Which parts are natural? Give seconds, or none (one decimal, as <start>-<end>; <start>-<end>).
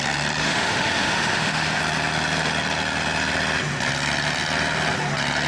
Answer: 0.0-0.4; 1.8-5.5